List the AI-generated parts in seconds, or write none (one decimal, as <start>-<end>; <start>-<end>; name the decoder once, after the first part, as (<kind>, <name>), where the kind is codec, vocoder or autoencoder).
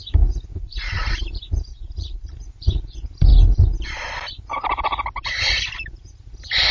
0.6-1.1 (vocoder, Vocos); 1.7-2.3